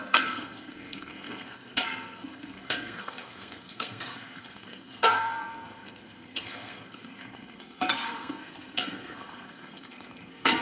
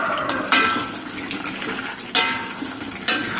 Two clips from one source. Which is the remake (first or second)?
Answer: first